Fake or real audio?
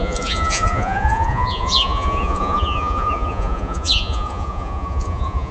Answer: fake